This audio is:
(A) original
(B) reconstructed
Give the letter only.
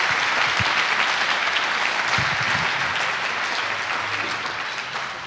A